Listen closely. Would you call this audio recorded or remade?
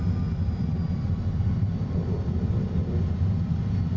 recorded